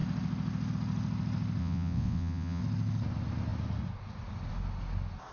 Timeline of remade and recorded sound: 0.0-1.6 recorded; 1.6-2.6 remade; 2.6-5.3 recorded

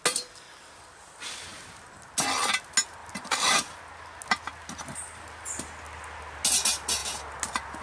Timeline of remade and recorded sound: 0.0-7.8 recorded

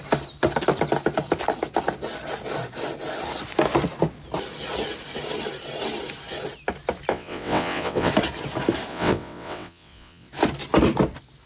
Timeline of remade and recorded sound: 0.0-7.1 recorded; 7.1-8.1 remade; 8.1-8.9 recorded; 8.9-10.3 remade; 10.3-11.5 recorded

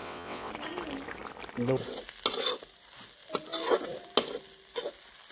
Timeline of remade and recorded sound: 0.0-0.5 remade; 0.5-5.3 recorded

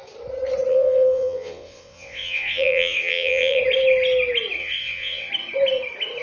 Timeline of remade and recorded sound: 0.0-0.7 recorded; 0.7-3.6 remade; 3.6-4.6 recorded; 4.6-5.3 remade; 5.3-6.2 recorded

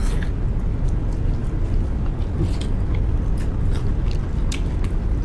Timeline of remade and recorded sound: 0.0-5.2 recorded